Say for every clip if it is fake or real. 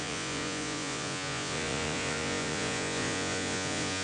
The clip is fake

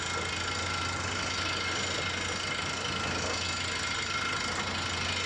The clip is real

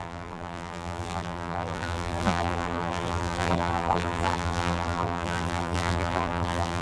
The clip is fake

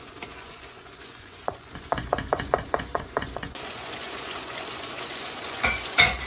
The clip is fake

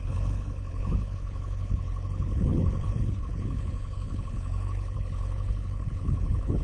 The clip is fake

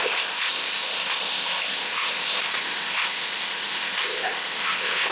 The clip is fake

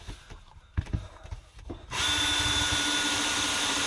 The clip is fake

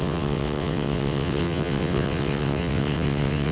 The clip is fake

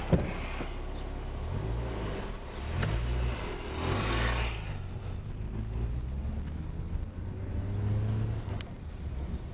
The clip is real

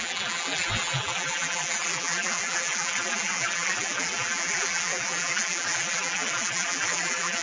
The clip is fake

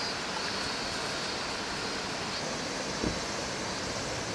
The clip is real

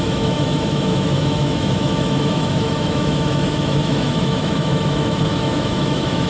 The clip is fake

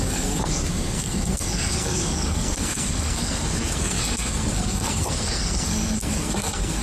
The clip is fake